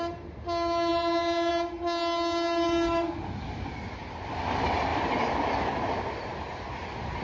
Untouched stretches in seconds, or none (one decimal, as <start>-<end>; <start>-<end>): 0.0-7.2